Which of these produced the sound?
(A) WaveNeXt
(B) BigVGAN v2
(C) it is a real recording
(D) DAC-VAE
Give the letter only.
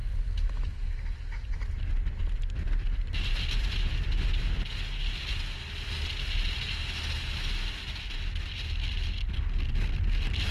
C